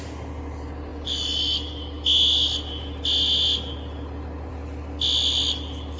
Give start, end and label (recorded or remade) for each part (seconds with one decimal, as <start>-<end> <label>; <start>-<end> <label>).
0.0-6.0 recorded